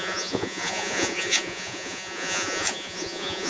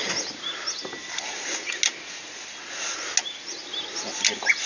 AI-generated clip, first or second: first